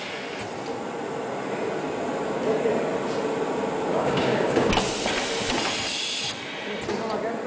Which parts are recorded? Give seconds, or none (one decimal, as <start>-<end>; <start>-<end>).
0.0-3.9; 4.7-7.5